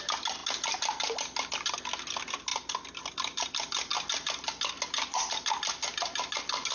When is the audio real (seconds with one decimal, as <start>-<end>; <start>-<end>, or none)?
0.0-6.7